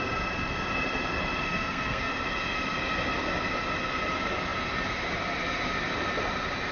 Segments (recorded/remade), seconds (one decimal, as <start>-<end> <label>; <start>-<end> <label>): 0.0-1.4 recorded; 1.4-2.1 remade; 2.1-6.7 recorded